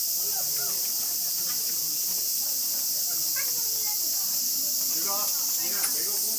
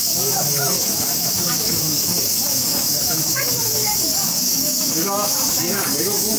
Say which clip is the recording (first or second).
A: first